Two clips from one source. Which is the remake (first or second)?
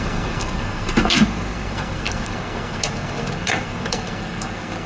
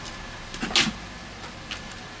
first